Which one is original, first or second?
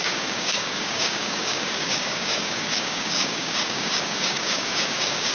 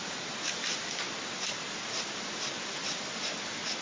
second